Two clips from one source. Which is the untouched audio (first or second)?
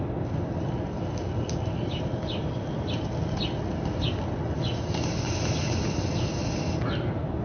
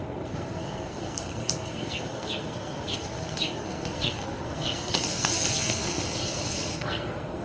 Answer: first